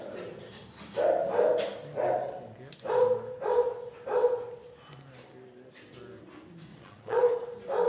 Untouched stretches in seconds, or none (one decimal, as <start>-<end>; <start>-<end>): 0.0-6.7; 7.2-7.9